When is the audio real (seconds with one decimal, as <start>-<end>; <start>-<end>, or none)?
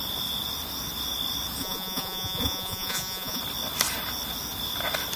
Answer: 0.0-1.6; 3.4-5.2